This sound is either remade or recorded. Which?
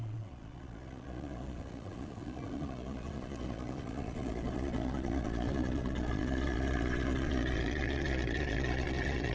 remade